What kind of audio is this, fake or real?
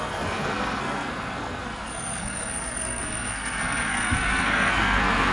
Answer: fake